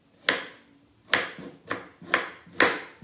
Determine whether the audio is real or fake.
real